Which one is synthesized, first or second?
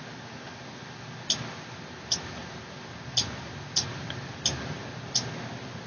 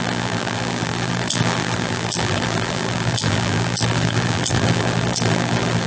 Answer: second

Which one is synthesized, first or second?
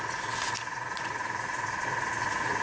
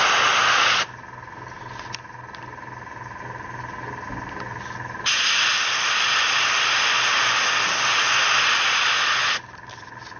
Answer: first